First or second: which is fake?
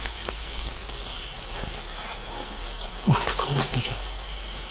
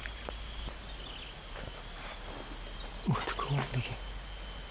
first